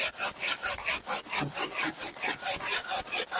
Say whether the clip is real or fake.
real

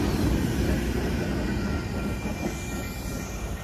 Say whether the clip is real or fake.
fake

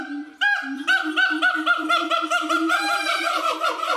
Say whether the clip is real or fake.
fake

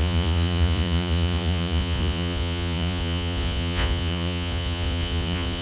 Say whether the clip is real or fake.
fake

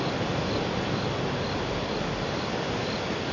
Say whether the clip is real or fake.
real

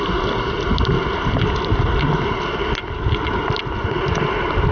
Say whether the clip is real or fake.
real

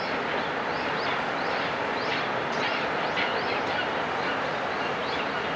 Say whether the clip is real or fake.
real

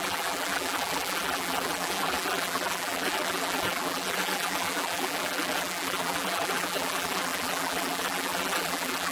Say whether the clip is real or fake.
fake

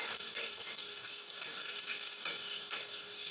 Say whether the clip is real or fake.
fake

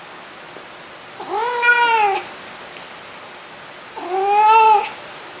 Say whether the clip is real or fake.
real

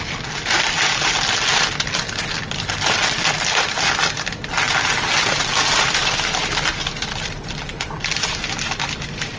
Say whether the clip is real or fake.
real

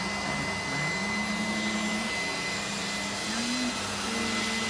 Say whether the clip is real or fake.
real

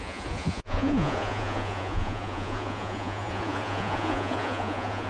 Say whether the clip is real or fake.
fake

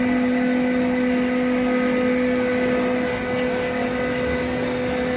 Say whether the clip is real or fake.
real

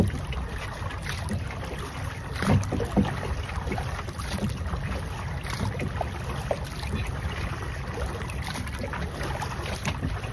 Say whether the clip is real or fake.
real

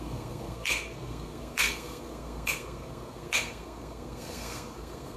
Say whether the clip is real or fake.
fake